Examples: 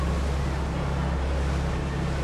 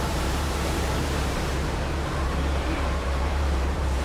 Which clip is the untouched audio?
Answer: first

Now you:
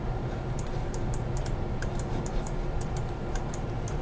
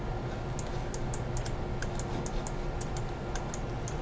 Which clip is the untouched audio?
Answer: second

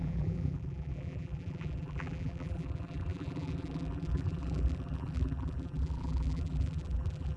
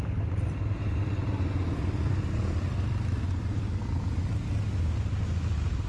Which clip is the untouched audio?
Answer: second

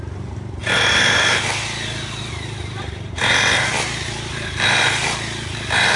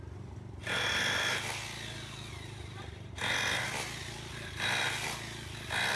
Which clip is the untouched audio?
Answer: second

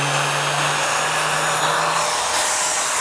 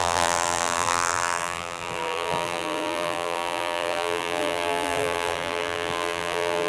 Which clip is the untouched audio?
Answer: first